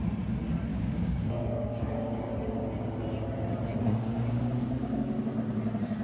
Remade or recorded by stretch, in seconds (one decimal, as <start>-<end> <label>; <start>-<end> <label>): 0.0-0.7 recorded; 0.7-2.3 remade; 2.3-3.7 recorded; 3.7-5.2 remade; 5.2-6.0 recorded